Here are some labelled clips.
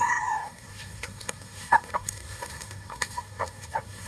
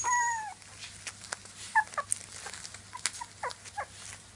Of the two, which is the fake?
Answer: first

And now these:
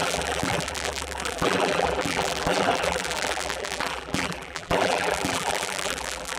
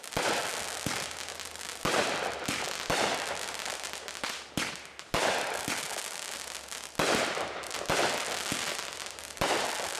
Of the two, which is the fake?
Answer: first